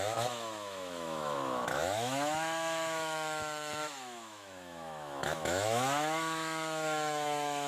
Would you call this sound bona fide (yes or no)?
no